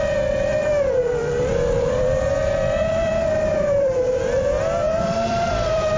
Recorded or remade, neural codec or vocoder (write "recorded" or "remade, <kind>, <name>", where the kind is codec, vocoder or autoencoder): remade, vocoder, BigVGAN v2